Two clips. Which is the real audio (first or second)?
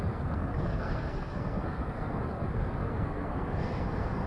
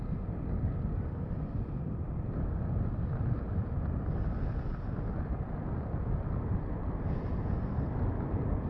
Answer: second